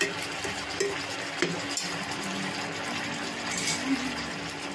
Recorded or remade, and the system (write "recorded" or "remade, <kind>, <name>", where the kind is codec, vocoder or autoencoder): recorded